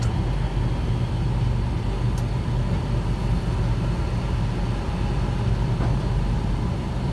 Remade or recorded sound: recorded